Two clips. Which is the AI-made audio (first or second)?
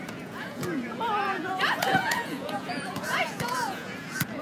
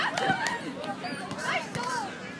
first